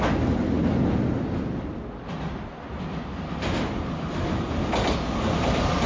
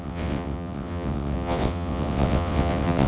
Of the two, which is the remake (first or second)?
second